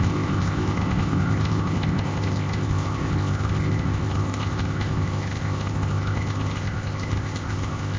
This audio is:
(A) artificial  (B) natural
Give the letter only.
A